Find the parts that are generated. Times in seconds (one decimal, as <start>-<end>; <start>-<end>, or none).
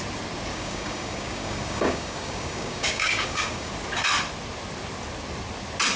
0.5-3.7